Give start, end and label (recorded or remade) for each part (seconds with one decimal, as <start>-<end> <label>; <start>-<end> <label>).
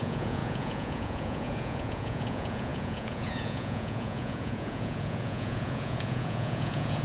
0.0-7.0 remade